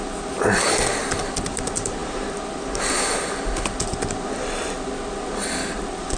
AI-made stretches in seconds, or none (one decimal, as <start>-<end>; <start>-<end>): none

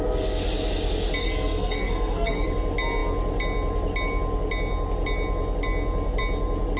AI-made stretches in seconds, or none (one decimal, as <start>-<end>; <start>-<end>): 1.2-2.5

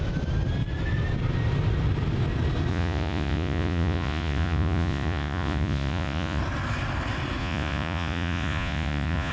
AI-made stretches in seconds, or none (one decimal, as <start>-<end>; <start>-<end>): 2.7-6.4; 7.4-9.3

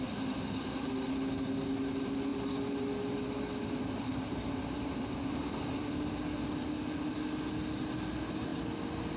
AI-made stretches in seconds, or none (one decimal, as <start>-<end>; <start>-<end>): none

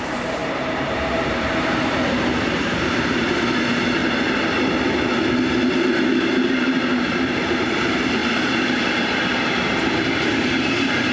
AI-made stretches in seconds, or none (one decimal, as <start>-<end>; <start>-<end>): 0.0-4.0; 5.8-8.2; 8.9-11.1

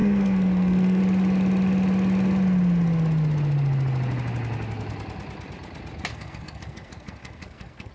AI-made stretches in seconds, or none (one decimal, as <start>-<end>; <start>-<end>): 0.0-1.0; 6.1-7.9

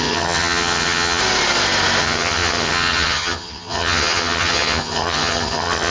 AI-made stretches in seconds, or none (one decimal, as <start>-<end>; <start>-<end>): 0.0-1.2; 2.0-5.9